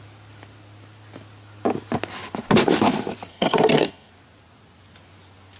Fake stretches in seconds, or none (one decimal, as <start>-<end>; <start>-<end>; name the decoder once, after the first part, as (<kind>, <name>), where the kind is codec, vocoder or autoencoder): 3.3-4.1 (codec, SNAC)